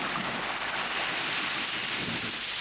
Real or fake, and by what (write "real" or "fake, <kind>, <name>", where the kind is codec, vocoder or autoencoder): real